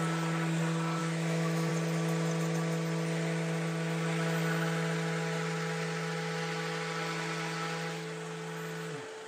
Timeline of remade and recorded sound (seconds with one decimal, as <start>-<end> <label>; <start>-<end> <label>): 0.0-1.0 recorded; 1.0-1.7 remade; 1.7-9.3 recorded